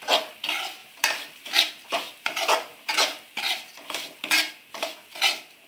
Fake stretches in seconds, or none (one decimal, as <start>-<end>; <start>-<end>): 0.8-4.2